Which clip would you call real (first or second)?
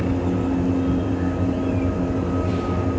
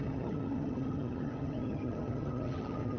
first